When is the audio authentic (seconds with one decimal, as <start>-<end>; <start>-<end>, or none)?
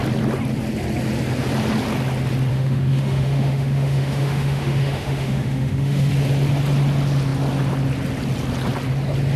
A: 0.0-2.5; 6.1-9.4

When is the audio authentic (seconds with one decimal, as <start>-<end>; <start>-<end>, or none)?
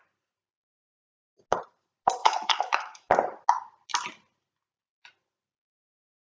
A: 0.0-2.2; 3.1-6.3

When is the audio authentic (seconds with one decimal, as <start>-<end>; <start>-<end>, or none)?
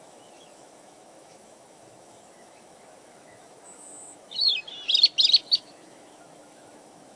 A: 4.5-5.4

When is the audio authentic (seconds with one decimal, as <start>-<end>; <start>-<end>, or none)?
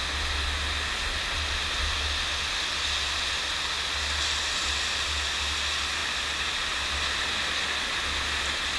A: 0.0-8.8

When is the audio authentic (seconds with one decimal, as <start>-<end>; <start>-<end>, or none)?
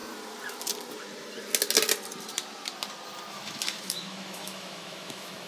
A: 0.0-3.3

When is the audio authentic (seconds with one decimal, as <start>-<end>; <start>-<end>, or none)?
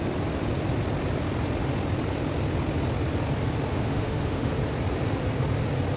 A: 0.0-3.7; 4.5-6.0